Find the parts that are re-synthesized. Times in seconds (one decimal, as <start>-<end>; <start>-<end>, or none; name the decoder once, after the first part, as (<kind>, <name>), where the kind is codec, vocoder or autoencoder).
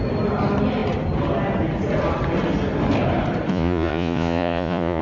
3.5-5.0 (vocoder, Vocos)